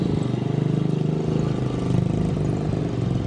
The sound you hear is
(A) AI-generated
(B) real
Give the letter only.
B